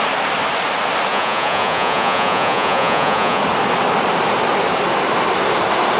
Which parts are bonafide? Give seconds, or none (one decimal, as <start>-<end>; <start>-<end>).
0.0-1.1; 3.4-6.0